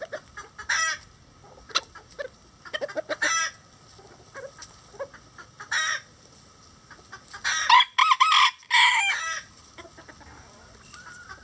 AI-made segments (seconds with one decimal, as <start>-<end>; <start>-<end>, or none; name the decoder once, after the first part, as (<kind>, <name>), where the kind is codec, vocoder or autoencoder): none